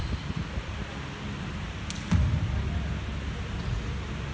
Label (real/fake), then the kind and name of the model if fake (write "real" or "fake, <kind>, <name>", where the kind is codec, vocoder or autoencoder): real